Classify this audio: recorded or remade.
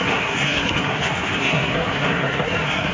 remade